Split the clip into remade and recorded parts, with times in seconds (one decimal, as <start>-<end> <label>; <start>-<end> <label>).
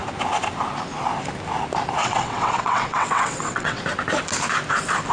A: 0.0-2.0 recorded; 2.0-3.8 remade; 3.8-5.1 recorded